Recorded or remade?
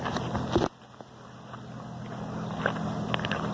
recorded